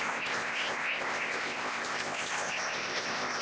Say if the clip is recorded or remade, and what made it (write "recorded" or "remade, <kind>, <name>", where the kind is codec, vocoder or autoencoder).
remade, codec, ZipCodec